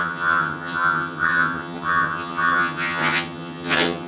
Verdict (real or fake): fake